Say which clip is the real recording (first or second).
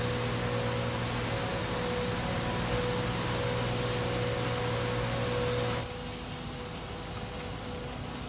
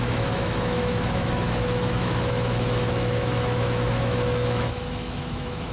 first